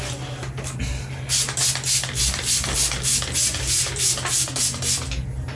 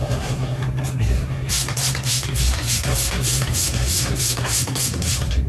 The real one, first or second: first